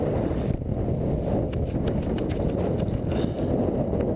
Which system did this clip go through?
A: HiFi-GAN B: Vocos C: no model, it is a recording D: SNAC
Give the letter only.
C